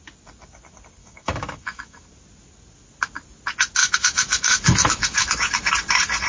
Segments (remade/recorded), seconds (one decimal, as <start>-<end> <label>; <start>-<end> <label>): 0.0-1.0 recorded; 1.0-2.0 remade; 2.0-3.8 recorded; 3.8-5.7 remade; 5.7-6.3 recorded